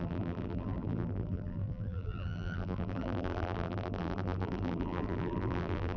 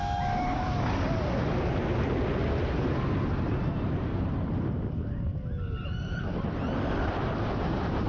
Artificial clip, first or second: first